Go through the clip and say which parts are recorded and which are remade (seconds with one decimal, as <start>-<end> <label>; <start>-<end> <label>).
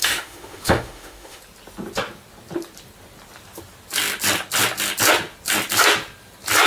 0.0-1.4 remade; 1.4-6.7 recorded